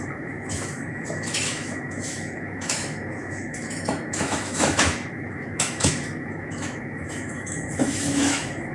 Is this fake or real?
fake